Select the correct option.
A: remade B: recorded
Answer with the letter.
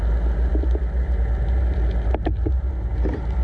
B